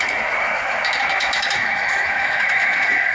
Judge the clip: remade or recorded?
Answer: remade